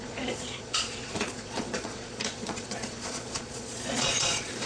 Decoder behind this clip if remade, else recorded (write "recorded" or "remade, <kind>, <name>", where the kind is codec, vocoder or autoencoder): remade, vocoder, Vocos